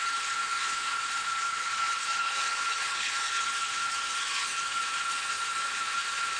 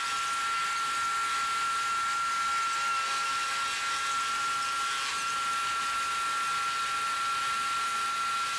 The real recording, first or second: second